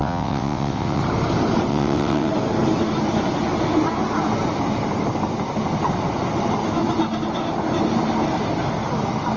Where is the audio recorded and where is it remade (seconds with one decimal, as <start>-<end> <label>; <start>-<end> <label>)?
0.0-1.0 remade; 1.0-1.7 recorded; 1.7-2.3 remade; 2.3-9.4 recorded